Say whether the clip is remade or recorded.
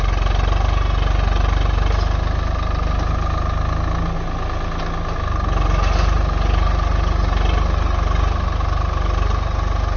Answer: recorded